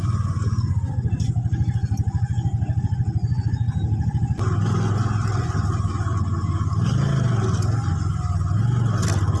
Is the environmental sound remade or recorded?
recorded